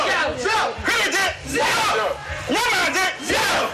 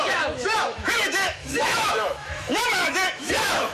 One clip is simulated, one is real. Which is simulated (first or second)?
second